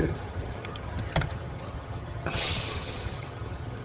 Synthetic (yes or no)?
yes